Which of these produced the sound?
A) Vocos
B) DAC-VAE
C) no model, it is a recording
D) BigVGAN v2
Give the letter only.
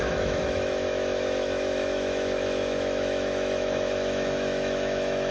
B